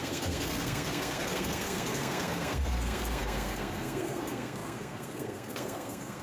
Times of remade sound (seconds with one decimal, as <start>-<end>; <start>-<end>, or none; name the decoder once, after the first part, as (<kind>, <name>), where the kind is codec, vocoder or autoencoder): 0.0-6.2 (codec, SNAC)

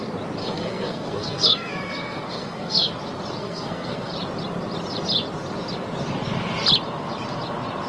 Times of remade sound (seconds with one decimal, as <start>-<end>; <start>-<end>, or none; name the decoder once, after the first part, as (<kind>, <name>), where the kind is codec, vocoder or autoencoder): 0.4-2.9 (codec, SNAC); 3.4-4.1